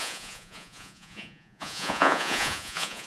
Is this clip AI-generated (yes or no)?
yes